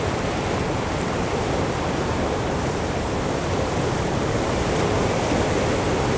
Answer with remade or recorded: recorded